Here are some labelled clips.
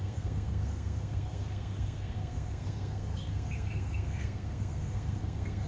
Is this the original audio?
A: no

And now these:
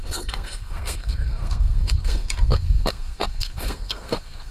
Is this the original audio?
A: no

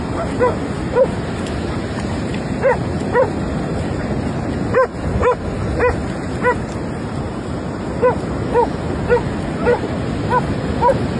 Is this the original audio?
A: yes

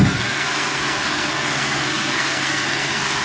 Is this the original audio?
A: no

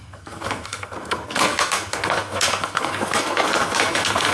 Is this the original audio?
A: no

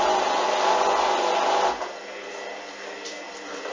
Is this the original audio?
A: yes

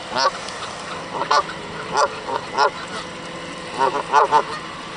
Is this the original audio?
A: yes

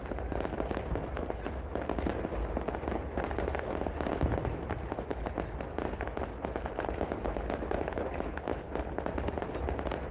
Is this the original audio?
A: yes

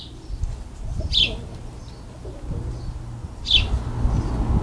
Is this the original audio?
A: yes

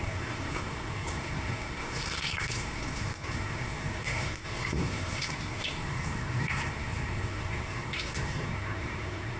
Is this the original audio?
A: no